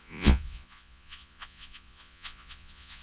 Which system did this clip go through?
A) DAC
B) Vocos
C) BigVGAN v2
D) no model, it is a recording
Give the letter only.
B